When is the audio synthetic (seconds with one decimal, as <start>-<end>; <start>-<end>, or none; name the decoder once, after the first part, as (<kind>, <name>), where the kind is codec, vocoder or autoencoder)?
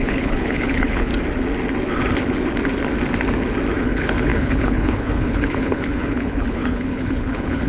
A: 0.0-1.1 (codec, HILCodec); 3.8-7.7